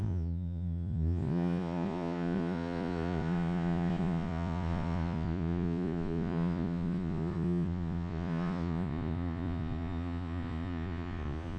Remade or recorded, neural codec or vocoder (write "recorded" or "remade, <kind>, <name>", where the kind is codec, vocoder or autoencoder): remade, vocoder, Vocos